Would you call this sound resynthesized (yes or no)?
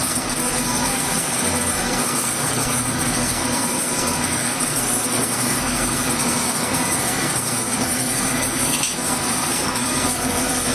yes